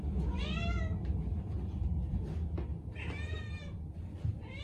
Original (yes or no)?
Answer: yes